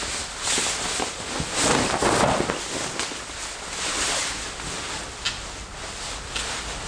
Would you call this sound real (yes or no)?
yes